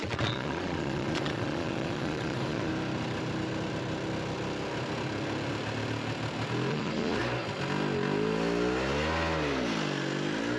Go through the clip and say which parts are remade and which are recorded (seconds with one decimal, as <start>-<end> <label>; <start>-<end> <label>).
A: 0.0-2.7 remade; 2.7-6.7 recorded; 6.7-7.2 remade; 7.2-10.6 recorded